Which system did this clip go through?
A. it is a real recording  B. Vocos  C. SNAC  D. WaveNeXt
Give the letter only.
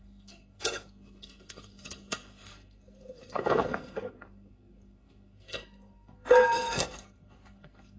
C